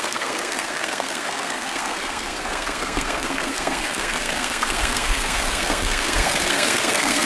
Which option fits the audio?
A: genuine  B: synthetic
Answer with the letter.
B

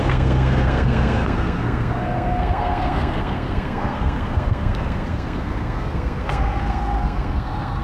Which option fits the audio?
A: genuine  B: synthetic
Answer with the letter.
B